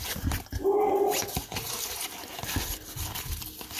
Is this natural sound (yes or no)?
yes